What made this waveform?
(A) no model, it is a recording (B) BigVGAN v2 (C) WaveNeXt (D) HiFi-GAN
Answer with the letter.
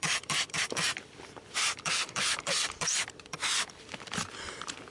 B